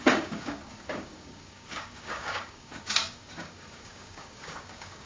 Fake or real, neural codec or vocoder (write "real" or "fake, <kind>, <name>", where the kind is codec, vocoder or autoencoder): fake, codec, DAC